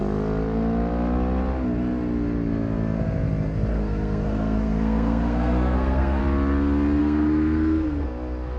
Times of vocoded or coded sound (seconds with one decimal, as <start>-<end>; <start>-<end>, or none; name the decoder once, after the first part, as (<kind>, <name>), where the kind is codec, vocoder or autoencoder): 3.7-6.2 (codec, SNAC); 7.0-8.6